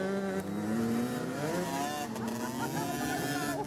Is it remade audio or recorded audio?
recorded